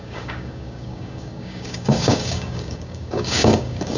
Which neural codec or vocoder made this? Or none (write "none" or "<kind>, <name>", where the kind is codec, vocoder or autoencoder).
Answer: codec, DAC